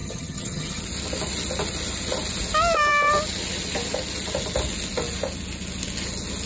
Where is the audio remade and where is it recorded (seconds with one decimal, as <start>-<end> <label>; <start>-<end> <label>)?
0.0-0.8 remade; 0.8-6.5 recorded